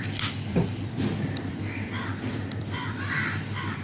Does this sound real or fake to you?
fake